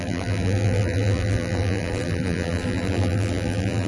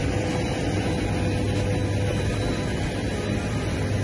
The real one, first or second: second